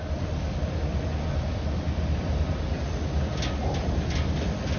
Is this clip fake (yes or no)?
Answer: no